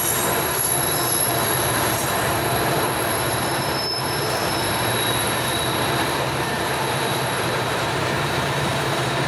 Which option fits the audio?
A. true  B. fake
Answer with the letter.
B